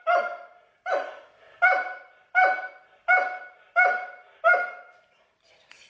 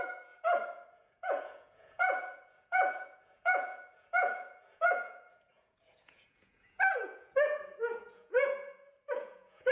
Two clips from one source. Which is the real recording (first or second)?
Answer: first